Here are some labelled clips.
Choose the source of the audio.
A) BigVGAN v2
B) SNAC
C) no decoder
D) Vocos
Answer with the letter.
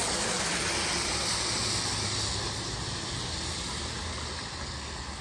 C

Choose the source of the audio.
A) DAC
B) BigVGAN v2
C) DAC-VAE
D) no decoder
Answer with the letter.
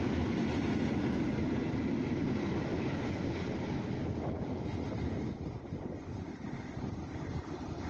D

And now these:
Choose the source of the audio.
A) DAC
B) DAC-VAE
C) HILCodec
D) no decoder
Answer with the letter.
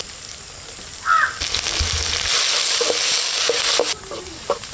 D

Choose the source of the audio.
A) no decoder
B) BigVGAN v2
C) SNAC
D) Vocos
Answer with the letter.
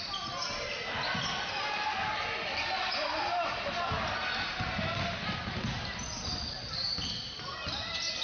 A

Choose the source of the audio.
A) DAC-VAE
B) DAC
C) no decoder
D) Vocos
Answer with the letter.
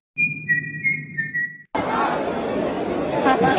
C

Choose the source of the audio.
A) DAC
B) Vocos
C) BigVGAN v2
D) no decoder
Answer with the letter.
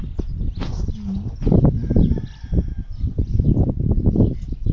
D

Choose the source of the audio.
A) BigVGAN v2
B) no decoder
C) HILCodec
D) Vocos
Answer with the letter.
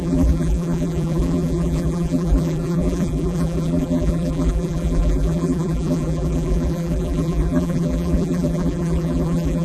A